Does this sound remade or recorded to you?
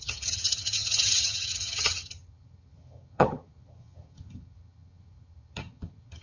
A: remade